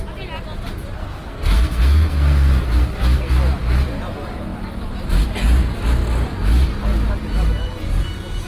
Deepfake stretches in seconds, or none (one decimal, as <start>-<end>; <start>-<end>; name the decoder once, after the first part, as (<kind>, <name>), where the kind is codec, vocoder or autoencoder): 1.0-3.3 (codec, SNAC)